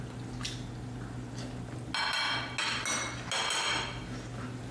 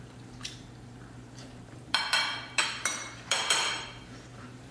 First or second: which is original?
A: first